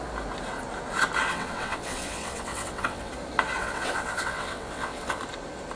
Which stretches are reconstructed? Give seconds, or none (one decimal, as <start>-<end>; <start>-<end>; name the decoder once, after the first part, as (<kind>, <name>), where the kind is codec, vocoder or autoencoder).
1.3-3.1 (vocoder, WaveNeXt); 3.6-5.2